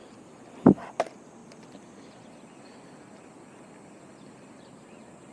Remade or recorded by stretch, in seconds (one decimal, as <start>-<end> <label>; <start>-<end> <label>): 0.0-0.6 remade; 0.6-1.4 recorded; 1.4-2.3 remade; 2.3-5.3 recorded